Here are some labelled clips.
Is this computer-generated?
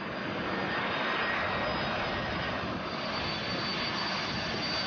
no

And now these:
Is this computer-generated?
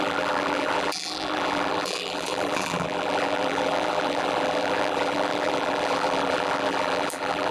yes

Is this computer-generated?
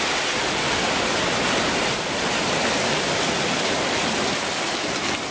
yes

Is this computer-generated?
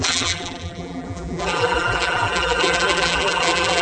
yes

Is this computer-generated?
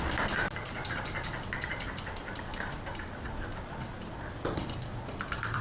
no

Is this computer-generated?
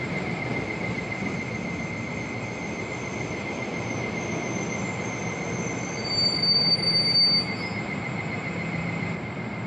no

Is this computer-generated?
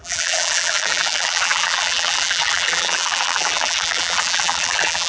yes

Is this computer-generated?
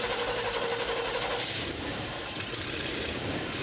yes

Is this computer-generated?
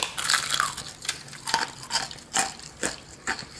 no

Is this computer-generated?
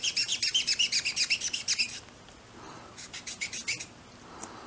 no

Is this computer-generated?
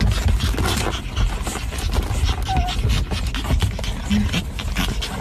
no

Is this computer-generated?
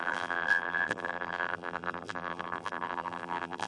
yes